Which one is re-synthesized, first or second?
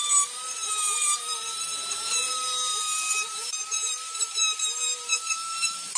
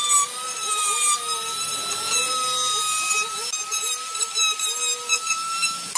first